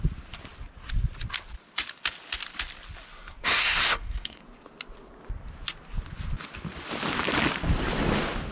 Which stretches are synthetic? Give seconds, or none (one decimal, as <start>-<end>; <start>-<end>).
3.4-4.4